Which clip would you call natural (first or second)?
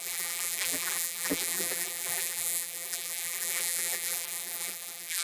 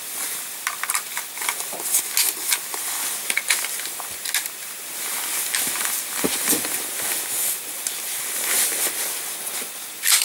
second